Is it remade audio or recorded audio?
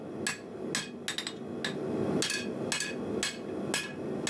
recorded